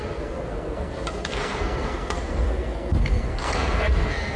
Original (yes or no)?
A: no